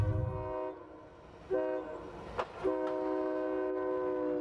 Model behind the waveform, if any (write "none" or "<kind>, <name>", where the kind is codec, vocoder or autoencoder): none